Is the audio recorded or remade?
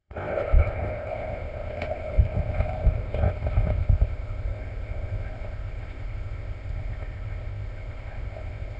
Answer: remade